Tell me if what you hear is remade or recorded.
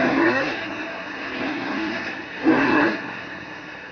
remade